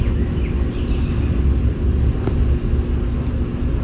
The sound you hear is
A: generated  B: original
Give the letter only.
B